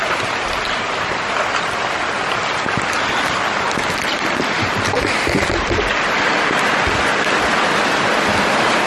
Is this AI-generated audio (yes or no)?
no